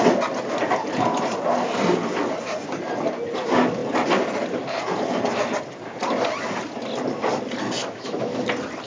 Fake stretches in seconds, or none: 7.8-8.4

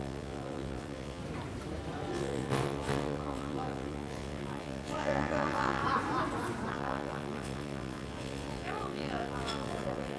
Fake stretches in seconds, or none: 0.0-1.2; 2.1-5.8; 6.7-10.2

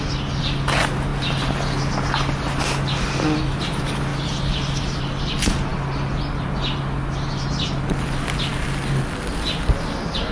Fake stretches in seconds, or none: none